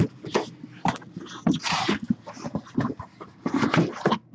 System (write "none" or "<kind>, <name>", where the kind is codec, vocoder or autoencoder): none